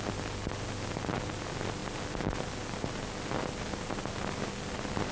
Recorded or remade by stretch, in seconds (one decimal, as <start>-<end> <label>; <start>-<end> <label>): 0.0-5.1 recorded